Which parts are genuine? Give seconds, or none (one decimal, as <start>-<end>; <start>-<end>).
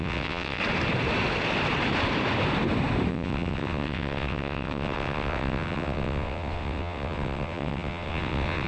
0.6-3.1